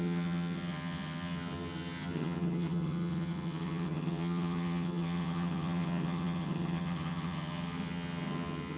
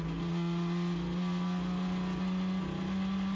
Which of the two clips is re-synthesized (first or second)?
first